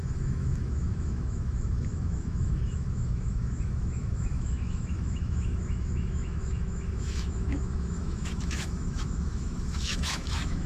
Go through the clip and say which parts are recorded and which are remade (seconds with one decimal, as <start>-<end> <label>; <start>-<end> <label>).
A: 0.0-10.7 remade